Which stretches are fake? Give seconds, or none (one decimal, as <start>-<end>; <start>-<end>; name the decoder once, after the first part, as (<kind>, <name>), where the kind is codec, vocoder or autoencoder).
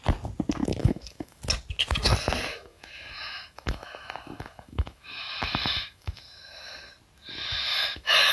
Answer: 0.8-1.4 (autoencoder, DAC-VAE); 2.5-6.9; 7.7-8.3